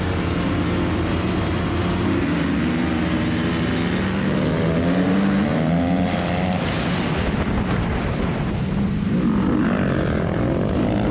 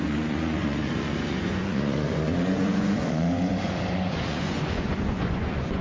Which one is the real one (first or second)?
first